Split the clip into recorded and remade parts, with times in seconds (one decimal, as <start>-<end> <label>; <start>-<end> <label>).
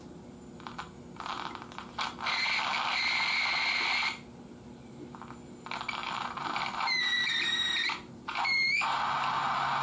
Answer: 0.0-6.0 recorded; 6.0-9.0 remade; 9.0-9.8 recorded